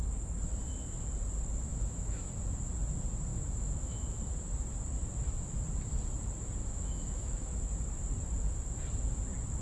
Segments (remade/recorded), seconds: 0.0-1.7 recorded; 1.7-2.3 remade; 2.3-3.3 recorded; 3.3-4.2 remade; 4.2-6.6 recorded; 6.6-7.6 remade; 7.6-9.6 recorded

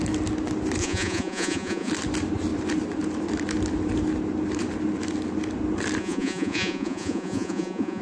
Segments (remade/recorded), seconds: 0.0-0.8 recorded; 0.8-1.9 remade; 1.9-6.0 recorded; 6.0-8.0 remade

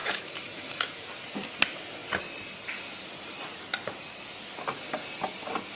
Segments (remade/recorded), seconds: 0.0-1.1 remade; 1.1-5.7 recorded